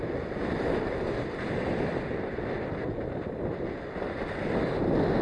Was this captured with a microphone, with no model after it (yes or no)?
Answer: yes